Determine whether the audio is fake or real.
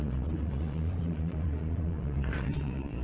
fake